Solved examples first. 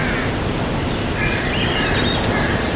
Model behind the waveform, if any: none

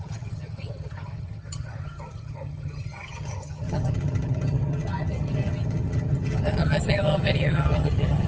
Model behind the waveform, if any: vocoder, HiFi-GAN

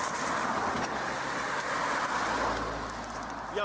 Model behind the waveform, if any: none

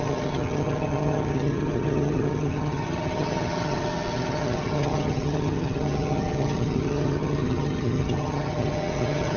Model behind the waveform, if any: vocoder, HiFi-GAN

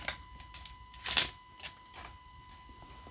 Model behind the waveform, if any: none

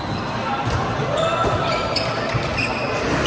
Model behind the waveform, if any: none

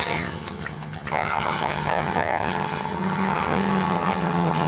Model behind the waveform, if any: vocoder, HiFi-GAN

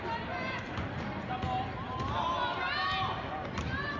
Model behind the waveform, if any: none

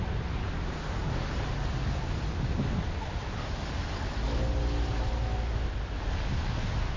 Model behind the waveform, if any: none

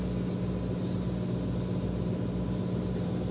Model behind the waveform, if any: none